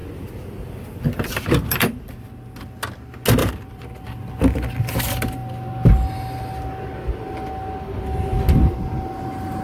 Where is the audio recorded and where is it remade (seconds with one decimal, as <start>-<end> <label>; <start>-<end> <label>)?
0.0-2.3 remade; 2.3-3.4 recorded; 3.4-4.3 remade; 4.3-9.6 recorded